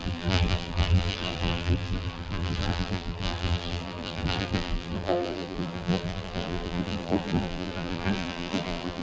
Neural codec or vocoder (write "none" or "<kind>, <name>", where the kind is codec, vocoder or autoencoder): vocoder, BigVGAN v2